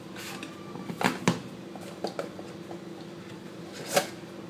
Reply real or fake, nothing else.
real